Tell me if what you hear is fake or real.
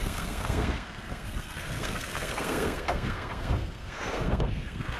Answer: fake